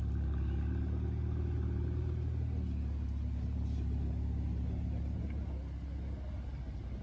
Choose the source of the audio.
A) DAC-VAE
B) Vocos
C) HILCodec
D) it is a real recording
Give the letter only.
D